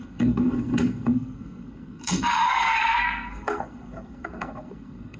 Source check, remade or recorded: remade